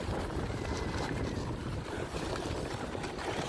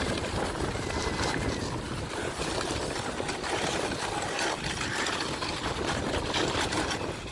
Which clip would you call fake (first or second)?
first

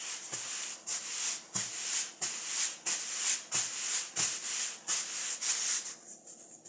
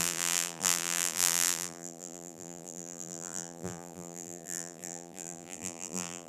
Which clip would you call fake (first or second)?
second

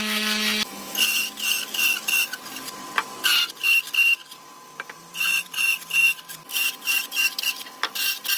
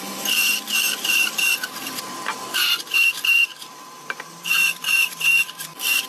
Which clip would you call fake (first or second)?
second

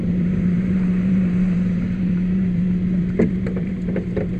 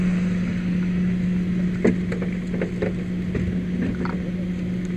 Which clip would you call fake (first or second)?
first